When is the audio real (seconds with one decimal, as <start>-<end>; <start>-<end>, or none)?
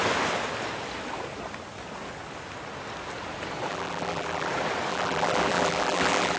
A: 0.0-3.7; 4.5-4.9